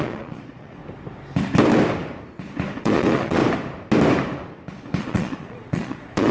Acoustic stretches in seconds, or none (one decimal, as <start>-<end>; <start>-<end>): 0.8-2.8; 3.4-5.0